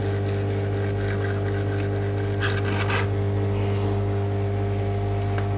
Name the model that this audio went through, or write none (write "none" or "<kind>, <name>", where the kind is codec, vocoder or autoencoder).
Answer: none